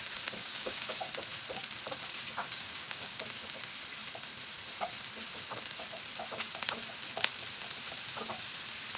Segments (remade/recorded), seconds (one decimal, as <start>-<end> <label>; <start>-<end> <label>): 0.0-0.4 recorded; 0.4-1.0 remade; 1.0-2.4 recorded; 2.4-3.2 remade; 3.2-9.0 recorded